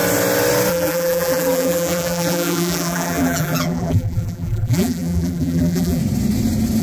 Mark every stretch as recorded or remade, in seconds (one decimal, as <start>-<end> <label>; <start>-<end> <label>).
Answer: 0.0-0.7 recorded; 0.7-6.0 remade; 6.0-6.8 recorded